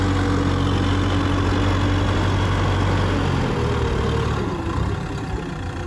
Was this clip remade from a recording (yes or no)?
no